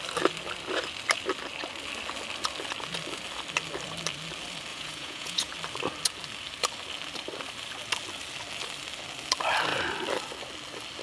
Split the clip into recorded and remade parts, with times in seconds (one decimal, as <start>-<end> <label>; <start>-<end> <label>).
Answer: 0.0-4.7 recorded; 4.7-5.5 remade; 5.5-11.0 recorded